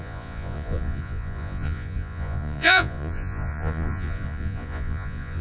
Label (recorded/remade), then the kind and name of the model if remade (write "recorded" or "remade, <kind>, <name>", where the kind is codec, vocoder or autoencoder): remade, vocoder, Vocos